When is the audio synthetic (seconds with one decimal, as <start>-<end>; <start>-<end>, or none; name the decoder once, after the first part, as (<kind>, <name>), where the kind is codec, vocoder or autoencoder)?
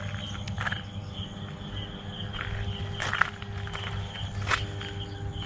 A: none